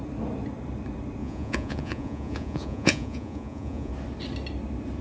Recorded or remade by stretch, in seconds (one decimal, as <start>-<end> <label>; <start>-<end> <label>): 0.0-1.2 recorded; 1.2-3.9 remade; 3.9-5.0 recorded